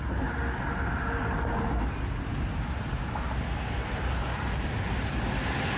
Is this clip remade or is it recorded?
recorded